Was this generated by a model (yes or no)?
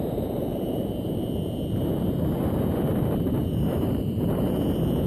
yes